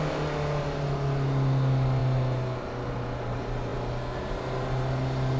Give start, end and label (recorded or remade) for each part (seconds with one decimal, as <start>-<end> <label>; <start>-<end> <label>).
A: 0.0-5.4 recorded